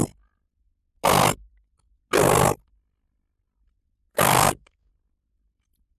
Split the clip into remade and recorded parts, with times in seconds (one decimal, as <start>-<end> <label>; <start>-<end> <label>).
0.0-4.1 recorded; 4.1-4.9 remade; 4.9-6.0 recorded